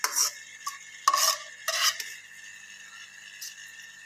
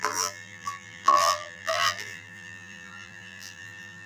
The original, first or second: first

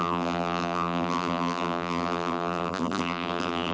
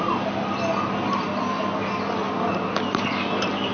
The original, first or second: second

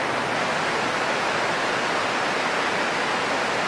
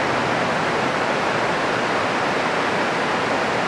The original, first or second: first